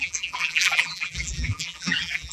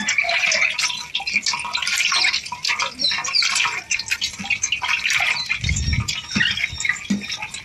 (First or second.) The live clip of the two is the second